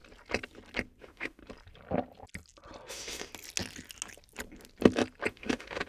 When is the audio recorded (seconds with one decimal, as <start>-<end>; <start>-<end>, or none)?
0.0-1.0; 1.4-2.9; 3.3-5.3